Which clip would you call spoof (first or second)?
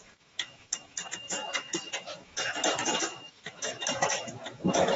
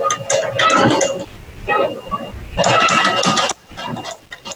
first